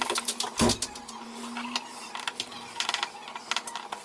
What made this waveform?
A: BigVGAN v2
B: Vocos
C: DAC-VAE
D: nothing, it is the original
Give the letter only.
D